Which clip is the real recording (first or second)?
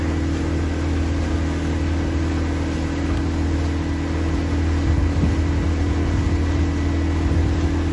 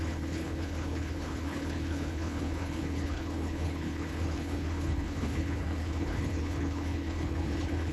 first